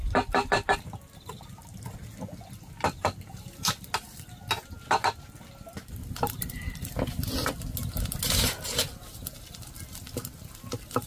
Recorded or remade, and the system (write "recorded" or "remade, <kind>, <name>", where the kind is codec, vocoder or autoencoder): recorded